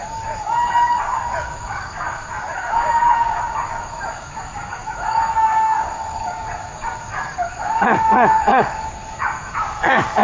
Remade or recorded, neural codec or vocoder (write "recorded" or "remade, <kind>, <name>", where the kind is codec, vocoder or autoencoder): remade, codec, DAC